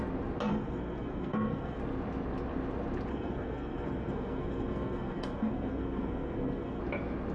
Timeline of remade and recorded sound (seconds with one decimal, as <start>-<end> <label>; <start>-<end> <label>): 0.0-0.5 recorded; 0.5-1.8 remade; 1.8-3.1 recorded; 3.1-6.8 remade; 6.8-7.3 recorded